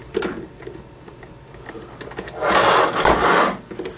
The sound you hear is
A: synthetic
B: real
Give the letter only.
B